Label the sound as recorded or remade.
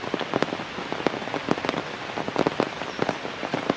recorded